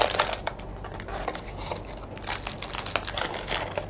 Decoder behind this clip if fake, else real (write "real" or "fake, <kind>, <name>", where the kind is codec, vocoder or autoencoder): real